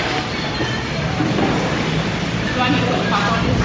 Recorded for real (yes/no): yes